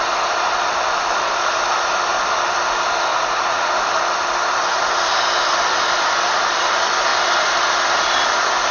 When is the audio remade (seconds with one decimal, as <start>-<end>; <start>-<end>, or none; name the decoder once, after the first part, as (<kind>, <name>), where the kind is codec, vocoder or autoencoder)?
3.1-3.7 (vocoder, Vocos)